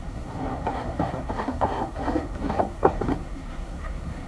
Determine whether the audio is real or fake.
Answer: fake